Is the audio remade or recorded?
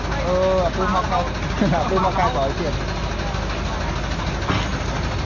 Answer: recorded